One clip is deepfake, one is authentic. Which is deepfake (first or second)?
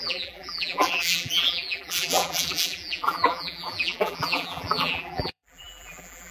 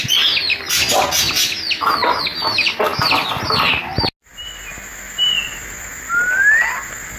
first